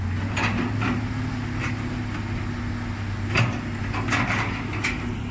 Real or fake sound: real